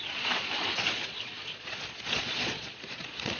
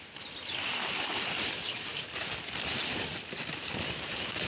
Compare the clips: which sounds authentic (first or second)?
second